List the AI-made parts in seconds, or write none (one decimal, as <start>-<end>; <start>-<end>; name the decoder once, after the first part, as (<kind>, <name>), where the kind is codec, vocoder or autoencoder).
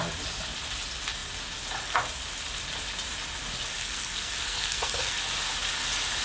3.8-5.2 (codec, SNAC)